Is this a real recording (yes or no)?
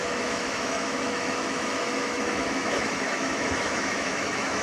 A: no